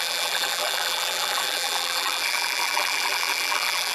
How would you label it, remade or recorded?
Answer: remade